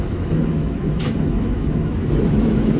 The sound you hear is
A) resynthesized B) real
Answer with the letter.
A